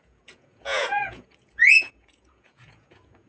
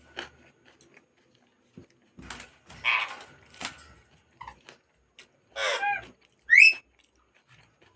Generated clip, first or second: first